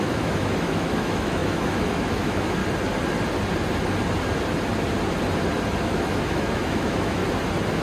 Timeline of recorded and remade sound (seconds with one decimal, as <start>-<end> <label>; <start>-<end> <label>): 0.0-2.6 remade; 2.6-5.8 recorded; 5.8-7.2 remade; 7.2-7.8 recorded

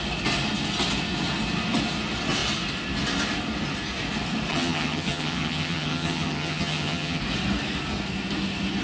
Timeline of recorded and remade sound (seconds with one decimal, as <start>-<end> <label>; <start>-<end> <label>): 0.0-4.5 recorded; 4.5-7.2 remade; 7.2-8.8 recorded

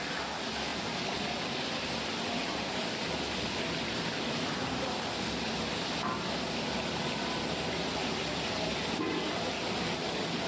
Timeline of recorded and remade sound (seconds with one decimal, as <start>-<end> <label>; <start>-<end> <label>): 0.0-10.5 recorded